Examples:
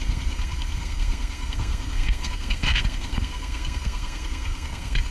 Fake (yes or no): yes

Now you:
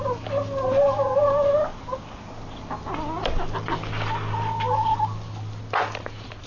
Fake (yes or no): no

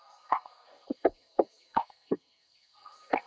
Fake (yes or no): yes